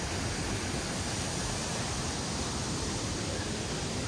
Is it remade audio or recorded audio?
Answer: recorded